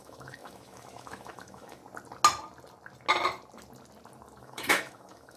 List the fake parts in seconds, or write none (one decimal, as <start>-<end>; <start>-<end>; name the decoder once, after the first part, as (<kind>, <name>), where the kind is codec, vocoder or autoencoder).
0.0-1.8 (autoencoder, DAC-VAE); 4.4-5.4